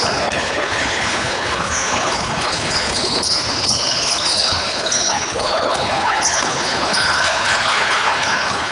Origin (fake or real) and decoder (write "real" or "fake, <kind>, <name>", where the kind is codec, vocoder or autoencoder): fake, codec, HILCodec